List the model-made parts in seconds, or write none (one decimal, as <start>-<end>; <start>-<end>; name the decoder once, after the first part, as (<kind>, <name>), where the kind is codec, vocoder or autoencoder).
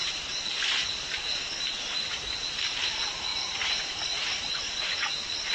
0.0-2.4 (vocoder, BigVGAN v2); 3.3-4.9